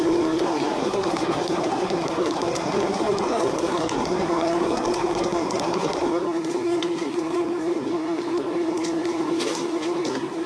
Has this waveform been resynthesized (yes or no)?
yes